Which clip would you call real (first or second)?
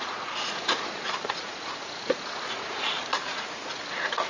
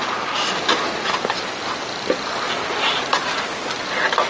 second